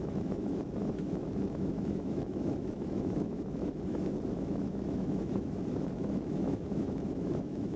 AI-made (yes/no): yes